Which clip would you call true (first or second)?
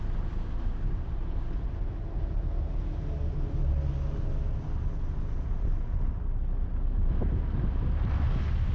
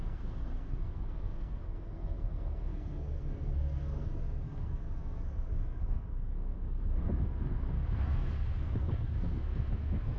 first